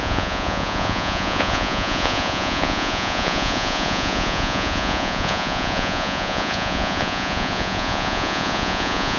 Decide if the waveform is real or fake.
fake